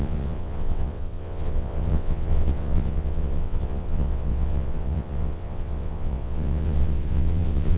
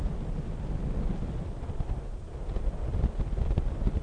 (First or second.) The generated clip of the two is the first